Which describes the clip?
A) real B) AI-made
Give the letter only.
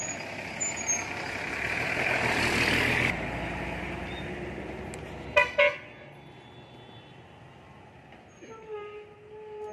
A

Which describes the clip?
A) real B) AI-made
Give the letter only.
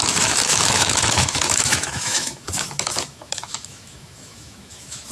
B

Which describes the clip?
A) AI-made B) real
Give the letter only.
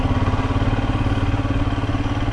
B